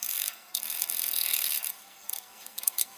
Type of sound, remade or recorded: remade